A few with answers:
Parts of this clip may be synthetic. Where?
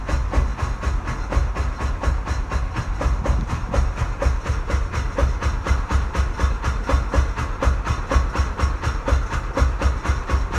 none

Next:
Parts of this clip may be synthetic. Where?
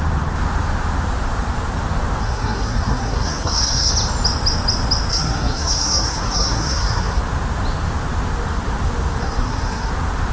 2.2-3.9 (codec, SNAC); 5.1-7.2; 9.2-9.9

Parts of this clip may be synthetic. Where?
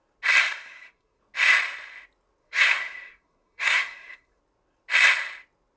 0.4-1.2 (codec, SNAC); 2.4-4.4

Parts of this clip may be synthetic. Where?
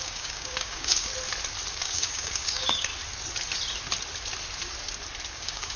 0.0-1.1 (codec, DAC); 1.7-2.9; 5.3-5.8